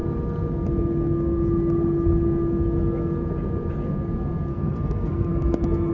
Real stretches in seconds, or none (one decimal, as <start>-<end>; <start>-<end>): 0.0-4.5